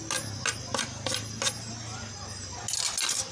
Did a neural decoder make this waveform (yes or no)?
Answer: no